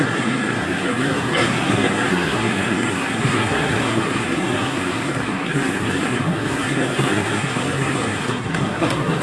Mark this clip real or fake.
fake